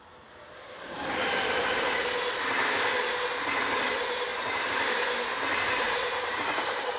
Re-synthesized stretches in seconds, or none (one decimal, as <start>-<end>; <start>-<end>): 4.3-7.0